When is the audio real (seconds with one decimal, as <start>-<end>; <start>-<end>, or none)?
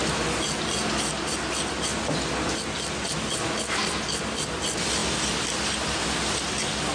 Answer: 0.0-6.9